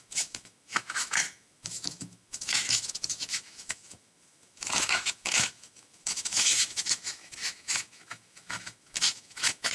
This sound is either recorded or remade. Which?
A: remade